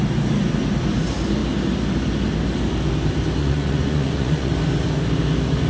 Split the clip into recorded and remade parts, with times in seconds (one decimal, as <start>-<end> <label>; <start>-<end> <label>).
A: 0.0-3.4 recorded; 3.4-4.5 remade; 4.5-5.7 recorded